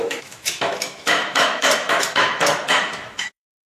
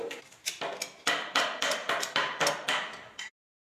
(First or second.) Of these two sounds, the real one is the second